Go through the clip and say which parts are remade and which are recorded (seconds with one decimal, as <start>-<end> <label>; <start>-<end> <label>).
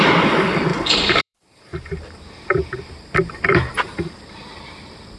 0.0-0.7 remade; 0.7-1.2 recorded; 1.2-5.2 remade